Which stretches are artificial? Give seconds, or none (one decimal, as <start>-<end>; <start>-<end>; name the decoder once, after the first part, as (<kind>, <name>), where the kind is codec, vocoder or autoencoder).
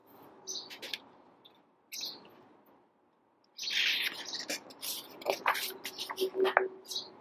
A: none